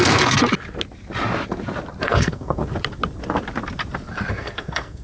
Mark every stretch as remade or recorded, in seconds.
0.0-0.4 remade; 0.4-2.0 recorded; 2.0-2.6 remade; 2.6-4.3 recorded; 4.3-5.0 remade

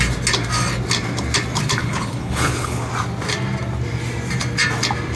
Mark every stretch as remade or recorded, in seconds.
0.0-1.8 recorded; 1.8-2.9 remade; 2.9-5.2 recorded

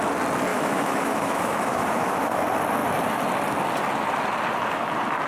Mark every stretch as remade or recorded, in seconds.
0.0-0.5 recorded; 0.5-2.4 remade; 2.4-5.3 recorded

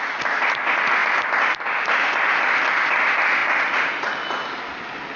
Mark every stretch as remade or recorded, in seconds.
0.0-5.2 recorded

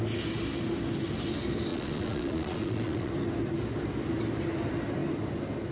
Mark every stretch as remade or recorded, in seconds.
0.0-1.7 recorded; 1.7-3.1 remade; 3.1-5.7 recorded